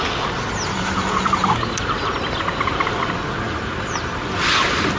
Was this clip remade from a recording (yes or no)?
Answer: no